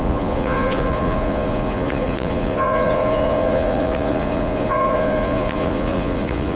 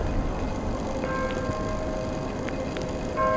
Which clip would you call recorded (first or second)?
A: second